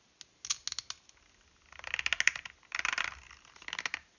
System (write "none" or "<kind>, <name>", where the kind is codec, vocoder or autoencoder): none